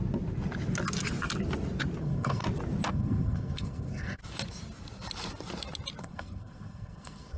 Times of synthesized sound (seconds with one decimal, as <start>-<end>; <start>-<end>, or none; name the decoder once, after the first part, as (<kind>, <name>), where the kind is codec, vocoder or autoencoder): 2.0-2.4 (codec, SNAC); 2.9-4.2; 6.0-7.4